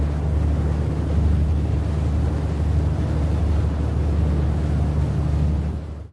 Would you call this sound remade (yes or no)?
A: no